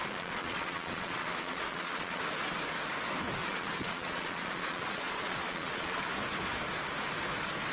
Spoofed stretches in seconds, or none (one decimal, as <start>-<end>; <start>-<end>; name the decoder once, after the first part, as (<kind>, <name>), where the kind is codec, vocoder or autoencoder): 0.0-2.2 (vocoder, Vocos); 3.4-6.0